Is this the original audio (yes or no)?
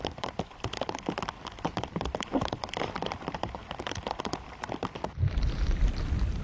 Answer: no